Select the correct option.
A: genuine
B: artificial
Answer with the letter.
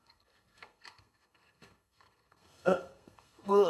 B